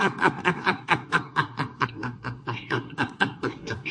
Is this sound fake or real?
fake